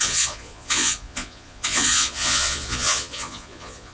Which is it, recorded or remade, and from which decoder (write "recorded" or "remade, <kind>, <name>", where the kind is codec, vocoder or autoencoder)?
remade, vocoder, Vocos